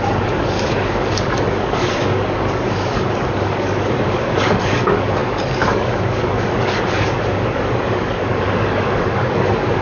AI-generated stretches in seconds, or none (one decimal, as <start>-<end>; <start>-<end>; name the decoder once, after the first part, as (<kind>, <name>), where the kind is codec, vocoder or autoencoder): 0.0-9.8 (codec, DAC)